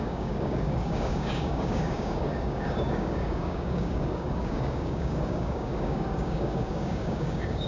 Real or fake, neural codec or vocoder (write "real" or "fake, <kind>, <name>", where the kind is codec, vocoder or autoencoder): fake, codec, DAC